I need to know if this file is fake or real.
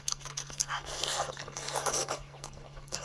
fake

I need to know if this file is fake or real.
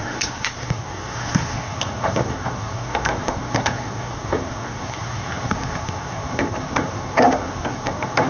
fake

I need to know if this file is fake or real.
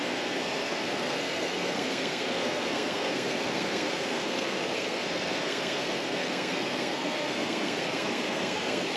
fake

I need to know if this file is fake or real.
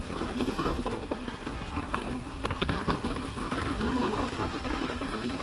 fake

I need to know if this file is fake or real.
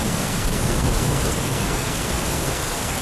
fake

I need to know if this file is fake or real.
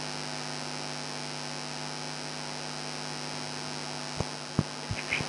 real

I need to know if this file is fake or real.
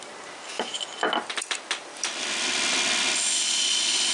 real